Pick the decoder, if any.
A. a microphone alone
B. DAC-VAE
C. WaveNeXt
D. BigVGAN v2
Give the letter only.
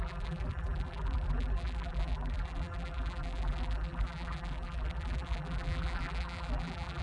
D